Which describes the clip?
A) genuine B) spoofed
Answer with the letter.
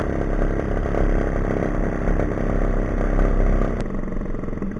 A